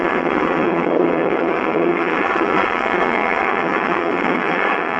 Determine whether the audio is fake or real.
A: fake